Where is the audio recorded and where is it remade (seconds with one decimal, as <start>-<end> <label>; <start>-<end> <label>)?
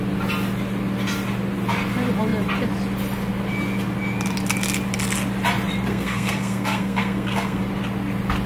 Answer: 0.0-5.9 recorded; 5.9-7.6 remade; 7.6-8.5 recorded